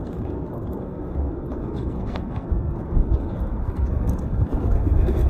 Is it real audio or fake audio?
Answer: fake